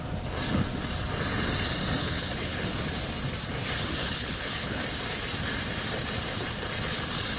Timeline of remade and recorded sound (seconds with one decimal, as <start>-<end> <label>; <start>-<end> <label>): 0.0-2.0 recorded; 2.0-2.8 remade; 2.8-4.0 recorded; 4.0-4.8 remade; 4.8-7.4 recorded